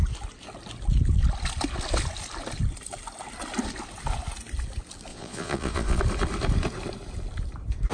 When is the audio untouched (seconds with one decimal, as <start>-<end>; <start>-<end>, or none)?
0.0-5.1; 6.0-7.9